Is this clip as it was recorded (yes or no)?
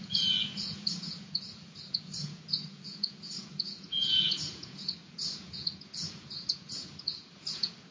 no